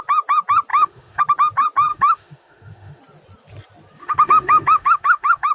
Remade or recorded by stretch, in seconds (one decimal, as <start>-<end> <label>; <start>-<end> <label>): 0.0-0.7 recorded; 0.7-1.2 remade; 1.2-1.9 recorded; 1.9-3.0 remade; 3.0-4.0 recorded; 4.0-5.5 remade